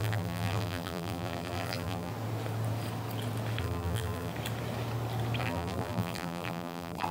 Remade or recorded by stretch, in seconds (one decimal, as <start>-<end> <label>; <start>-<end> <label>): 0.0-2.1 remade; 2.1-3.6 recorded; 3.6-4.3 remade; 4.3-5.4 recorded; 5.4-7.1 remade